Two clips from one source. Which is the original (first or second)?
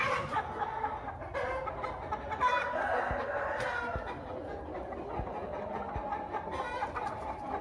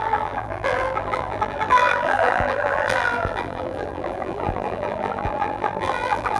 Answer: first